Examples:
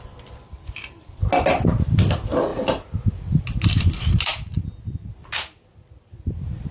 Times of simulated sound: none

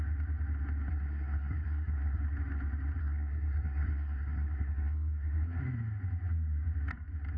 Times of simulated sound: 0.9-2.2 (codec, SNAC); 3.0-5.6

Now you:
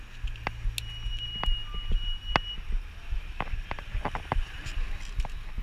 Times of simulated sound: none

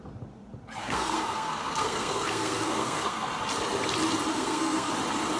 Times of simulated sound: 0.8-3.3 (codec, SNAC); 4.3-4.9